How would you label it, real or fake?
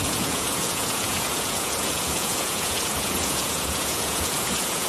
fake